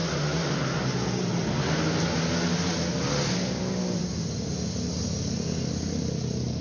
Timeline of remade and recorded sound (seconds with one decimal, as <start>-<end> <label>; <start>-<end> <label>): 0.0-6.6 recorded